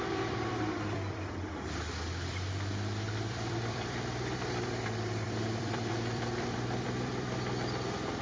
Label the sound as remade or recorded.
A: remade